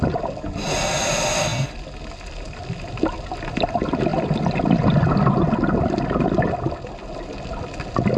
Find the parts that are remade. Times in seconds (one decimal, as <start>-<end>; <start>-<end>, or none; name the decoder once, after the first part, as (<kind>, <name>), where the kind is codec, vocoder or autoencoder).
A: none